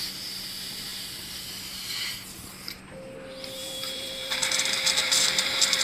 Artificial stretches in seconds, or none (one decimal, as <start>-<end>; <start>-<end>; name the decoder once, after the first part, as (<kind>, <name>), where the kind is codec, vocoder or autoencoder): 3.6-5.8 (vocoder, BigVGAN v2)